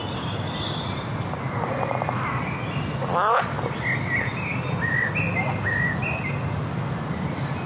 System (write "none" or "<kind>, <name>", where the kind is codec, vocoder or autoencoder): none